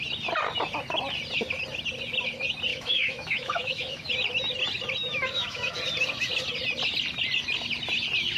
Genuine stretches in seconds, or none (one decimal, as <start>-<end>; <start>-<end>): 0.0-2.7; 4.1-5.0; 5.7-8.4

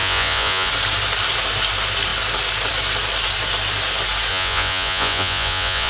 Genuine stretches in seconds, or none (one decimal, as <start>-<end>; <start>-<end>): 0.7-4.3

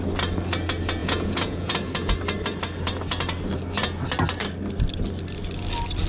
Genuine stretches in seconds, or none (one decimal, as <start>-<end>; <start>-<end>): 0.0-1.0; 1.7-6.1

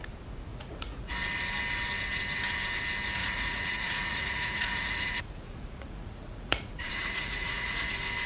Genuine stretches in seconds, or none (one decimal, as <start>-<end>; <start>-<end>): 0.0-0.5; 1.1-3.2; 7.9-8.3

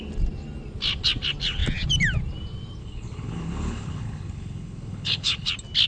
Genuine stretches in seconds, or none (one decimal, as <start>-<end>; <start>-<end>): 0.0-2.8; 5.5-5.9

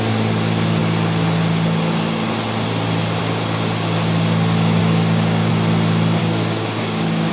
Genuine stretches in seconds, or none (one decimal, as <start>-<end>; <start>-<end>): 0.0-4.8; 5.5-6.2

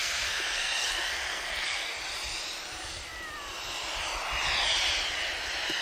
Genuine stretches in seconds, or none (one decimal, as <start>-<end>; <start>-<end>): 1.9-5.8

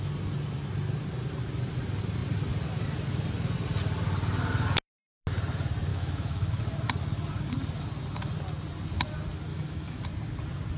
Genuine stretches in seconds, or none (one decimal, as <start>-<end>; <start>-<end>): 0.0-5.9; 6.6-9.5; 10.0-10.8